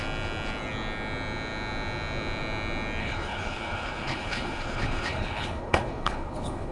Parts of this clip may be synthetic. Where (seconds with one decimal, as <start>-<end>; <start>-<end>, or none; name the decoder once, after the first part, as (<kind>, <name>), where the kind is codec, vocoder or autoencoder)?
3.0-6.7 (codec, HILCodec)